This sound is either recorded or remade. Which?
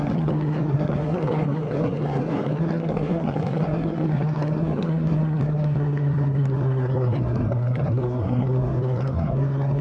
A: remade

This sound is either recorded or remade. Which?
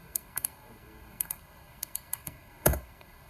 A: remade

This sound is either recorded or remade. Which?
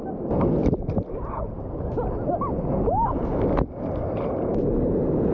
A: recorded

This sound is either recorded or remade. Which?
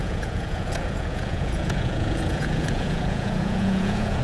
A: remade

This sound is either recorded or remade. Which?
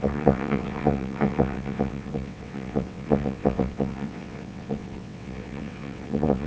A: remade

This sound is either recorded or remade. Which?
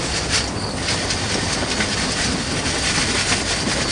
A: recorded